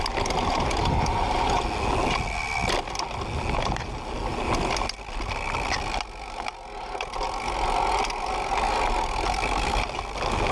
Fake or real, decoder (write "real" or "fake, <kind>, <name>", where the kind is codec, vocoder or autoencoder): real